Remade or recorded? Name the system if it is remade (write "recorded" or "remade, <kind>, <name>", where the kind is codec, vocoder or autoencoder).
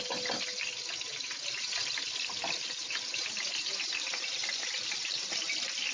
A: recorded